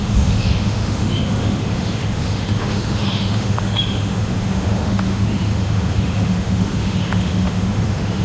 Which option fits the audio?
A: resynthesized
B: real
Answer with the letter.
A